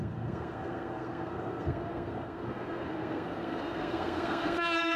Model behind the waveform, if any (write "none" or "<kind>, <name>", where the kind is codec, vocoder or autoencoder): codec, SNAC